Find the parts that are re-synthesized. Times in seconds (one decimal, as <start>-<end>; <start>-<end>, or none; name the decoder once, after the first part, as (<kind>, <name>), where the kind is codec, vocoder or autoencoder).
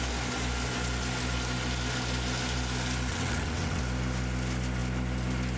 3.1-3.8 (vocoder, WaveNeXt)